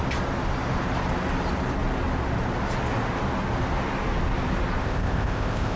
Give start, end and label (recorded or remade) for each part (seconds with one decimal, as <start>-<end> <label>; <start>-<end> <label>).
0.0-4.8 recorded; 4.8-5.8 remade